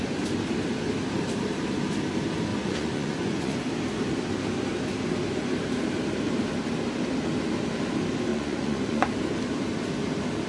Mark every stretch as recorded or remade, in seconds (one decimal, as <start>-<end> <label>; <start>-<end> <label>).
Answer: 0.0-2.5 recorded; 2.5-3.6 remade; 3.6-8.3 recorded; 8.3-9.1 remade; 9.1-10.5 recorded